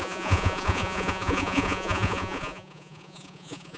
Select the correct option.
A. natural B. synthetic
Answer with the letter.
B